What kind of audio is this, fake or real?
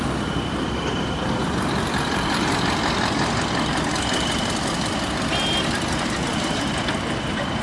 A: fake